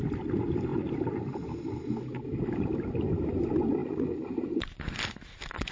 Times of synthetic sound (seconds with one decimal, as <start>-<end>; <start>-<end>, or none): 3.8-4.8